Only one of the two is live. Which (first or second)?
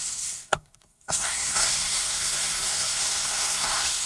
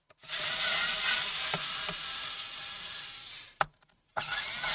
second